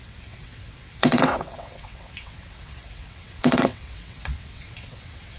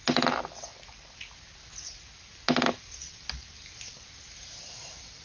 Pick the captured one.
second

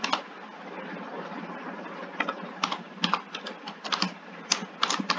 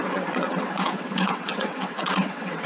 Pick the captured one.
first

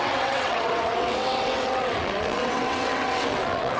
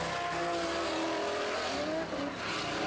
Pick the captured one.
second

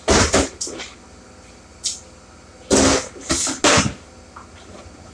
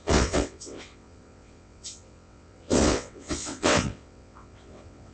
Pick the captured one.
first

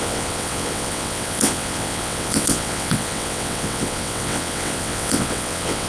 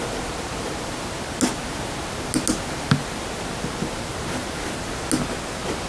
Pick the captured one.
second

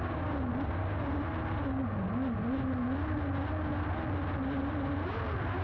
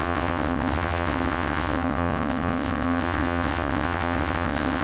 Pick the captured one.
first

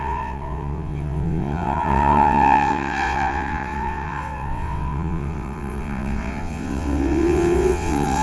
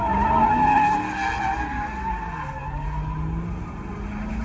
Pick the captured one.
second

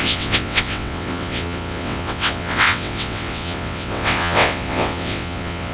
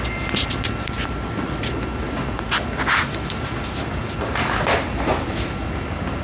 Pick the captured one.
second